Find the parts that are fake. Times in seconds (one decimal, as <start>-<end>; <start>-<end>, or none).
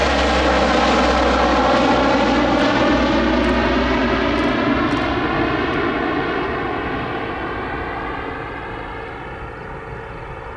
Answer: none